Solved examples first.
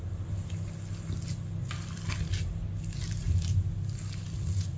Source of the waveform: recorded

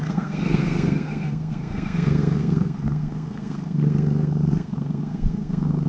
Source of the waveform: remade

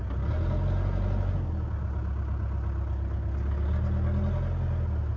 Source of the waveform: recorded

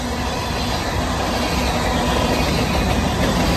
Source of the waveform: recorded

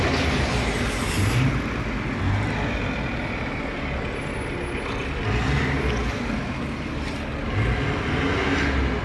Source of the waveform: recorded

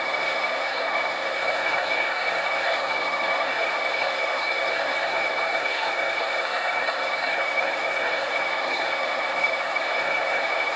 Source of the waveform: remade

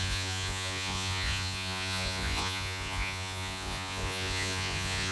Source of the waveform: remade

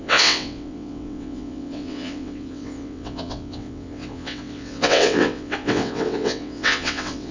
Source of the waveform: remade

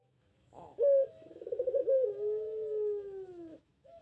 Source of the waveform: remade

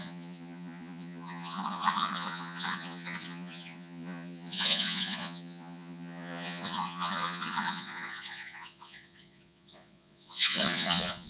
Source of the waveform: remade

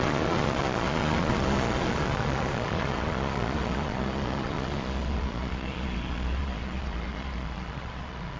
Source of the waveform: remade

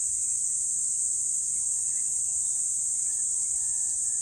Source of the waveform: recorded